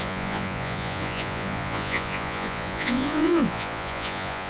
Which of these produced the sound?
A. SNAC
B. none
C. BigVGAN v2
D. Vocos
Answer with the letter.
D